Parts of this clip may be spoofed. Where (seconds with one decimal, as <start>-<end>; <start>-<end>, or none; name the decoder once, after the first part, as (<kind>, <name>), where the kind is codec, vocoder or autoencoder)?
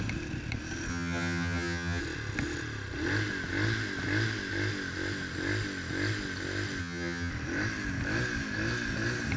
0.9-2.0 (vocoder, HiFi-GAN); 6.8-7.3